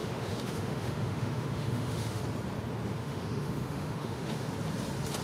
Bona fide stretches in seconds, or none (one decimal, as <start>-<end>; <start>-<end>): 2.2-2.9; 4.5-5.2